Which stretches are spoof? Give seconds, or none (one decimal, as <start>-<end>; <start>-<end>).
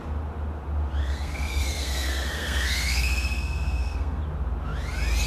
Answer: 1.0-4.2